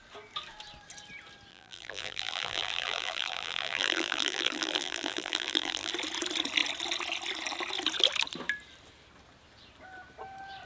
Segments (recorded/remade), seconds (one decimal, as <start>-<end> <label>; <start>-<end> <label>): 0.0-1.5 recorded; 1.5-5.9 remade; 5.9-10.7 recorded